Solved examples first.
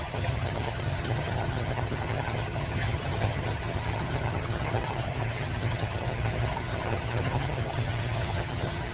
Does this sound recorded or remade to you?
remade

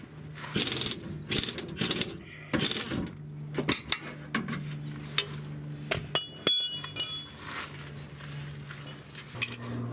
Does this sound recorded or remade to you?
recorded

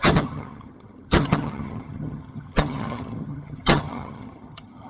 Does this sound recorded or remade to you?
remade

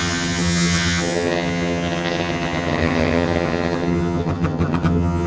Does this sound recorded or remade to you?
remade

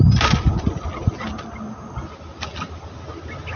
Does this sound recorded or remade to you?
recorded